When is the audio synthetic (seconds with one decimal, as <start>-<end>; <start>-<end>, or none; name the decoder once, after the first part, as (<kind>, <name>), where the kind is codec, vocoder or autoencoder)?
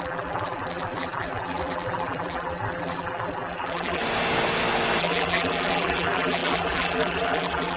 0.0-4.0 (vocoder, BigVGAN v2); 5.0-7.8